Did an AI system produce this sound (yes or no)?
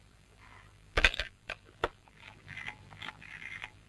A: yes